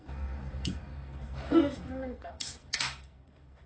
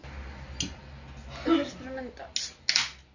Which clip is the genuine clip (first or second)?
second